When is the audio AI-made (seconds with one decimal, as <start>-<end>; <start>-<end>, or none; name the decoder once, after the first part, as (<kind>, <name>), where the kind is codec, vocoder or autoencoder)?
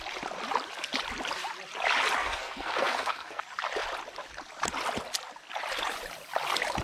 2.2-3.4 (codec, SNAC)